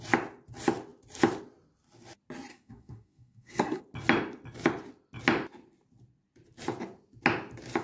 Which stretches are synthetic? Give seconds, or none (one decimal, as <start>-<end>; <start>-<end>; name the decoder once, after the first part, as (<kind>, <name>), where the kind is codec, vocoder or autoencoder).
2.5-3.8 (codec, SNAC)